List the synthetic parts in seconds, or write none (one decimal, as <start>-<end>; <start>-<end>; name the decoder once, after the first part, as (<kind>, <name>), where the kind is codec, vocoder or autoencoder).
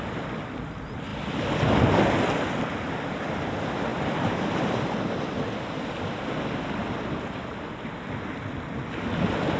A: none